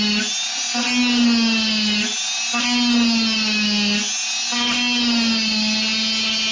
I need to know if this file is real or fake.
real